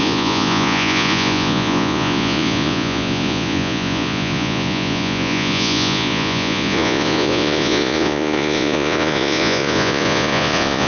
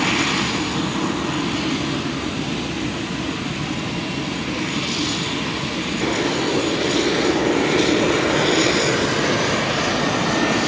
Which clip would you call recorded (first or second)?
second